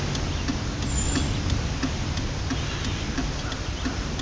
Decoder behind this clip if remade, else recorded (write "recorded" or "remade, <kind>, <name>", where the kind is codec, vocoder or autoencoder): recorded